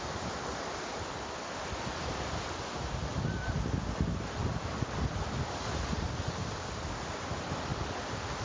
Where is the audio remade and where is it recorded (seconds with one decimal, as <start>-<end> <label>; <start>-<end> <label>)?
0.0-8.4 remade

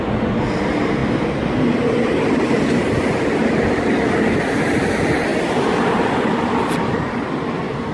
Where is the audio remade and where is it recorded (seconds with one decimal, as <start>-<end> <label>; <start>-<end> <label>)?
0.0-7.9 recorded

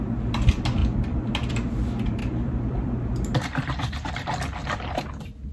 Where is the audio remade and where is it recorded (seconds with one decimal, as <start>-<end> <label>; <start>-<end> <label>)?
0.0-2.2 recorded; 2.2-4.1 remade; 4.1-4.6 recorded; 4.6-5.1 remade; 5.1-5.5 recorded

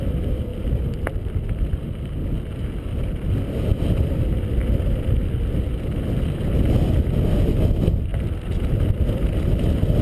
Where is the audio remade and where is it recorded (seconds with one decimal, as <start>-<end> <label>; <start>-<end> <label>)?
0.0-0.5 recorded; 0.5-2.0 remade; 2.0-8.1 recorded; 8.1-8.9 remade; 8.9-10.0 recorded